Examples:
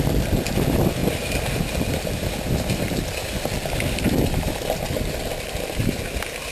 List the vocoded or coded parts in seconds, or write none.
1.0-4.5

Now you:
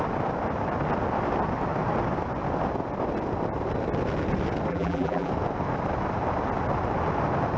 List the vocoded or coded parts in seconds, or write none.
4.7-5.3

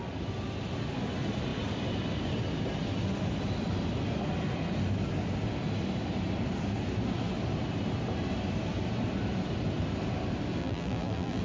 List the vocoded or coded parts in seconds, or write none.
10.6-11.4

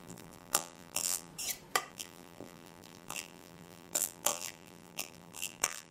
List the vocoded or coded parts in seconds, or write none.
0.0-1.3; 1.9-5.9

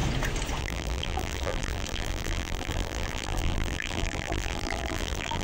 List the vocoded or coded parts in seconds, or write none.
0.6-5.4